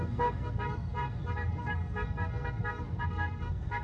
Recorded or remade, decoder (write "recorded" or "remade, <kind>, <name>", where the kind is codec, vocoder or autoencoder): remade, codec, SNAC